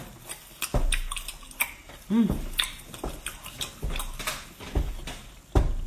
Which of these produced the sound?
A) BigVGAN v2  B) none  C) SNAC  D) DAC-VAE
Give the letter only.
B